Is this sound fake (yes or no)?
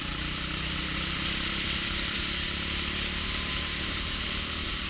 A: yes